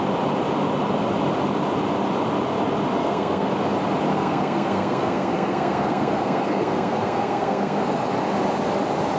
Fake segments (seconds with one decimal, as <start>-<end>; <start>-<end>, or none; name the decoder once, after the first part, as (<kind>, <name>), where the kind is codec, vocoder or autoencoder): 3.0-3.5 (codec, SNAC); 4.1-7.8